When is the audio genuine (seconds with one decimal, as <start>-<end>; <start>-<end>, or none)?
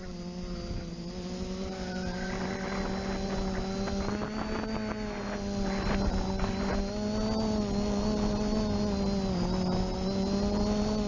0.0-11.1